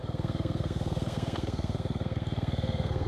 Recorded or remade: remade